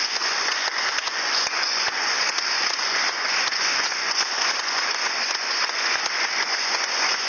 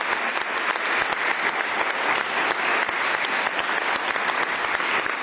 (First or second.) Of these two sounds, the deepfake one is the first